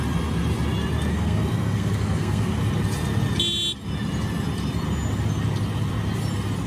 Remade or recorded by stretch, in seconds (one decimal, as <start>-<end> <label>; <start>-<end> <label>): 0.0-1.1 recorded; 1.1-2.5 remade; 2.5-6.7 recorded